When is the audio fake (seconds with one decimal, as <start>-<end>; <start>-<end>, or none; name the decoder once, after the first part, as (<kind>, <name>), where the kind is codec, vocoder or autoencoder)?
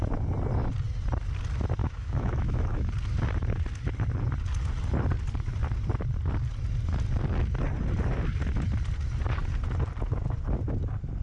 1.8-2.9 (autoencoder, DAC-VAE)